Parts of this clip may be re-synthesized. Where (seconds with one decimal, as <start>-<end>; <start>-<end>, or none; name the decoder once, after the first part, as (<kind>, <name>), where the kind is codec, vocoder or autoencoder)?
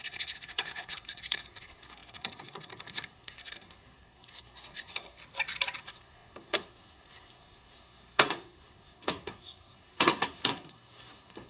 0.0-5.2 (codec, SNAC); 5.8-11.5